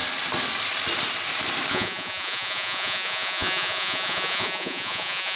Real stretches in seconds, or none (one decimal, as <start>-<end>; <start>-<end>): 0.0-1.7